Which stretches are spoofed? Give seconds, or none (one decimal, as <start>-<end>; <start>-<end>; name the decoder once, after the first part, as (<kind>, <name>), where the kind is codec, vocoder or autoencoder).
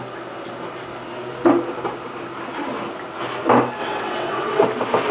3.8-4.6 (vocoder, WaveNeXt)